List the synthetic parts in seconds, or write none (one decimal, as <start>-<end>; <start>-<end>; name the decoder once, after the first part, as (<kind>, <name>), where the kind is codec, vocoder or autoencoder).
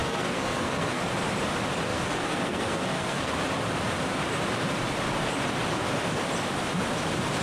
0.0-1.0 (codec, SNAC); 1.9-3.3